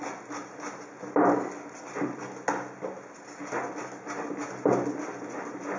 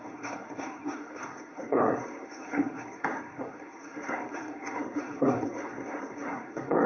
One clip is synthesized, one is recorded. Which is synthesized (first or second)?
second